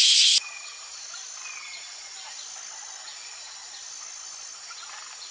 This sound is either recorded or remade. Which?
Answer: recorded